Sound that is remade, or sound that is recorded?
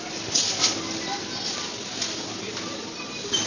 recorded